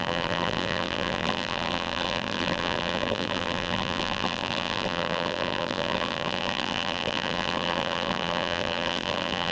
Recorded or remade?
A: remade